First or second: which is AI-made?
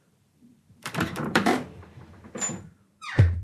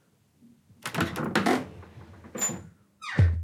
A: first